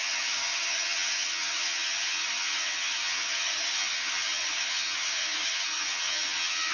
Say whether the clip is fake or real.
fake